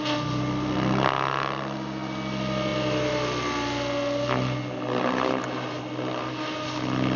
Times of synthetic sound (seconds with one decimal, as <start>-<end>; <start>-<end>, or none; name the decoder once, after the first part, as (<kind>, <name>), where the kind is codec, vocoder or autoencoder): none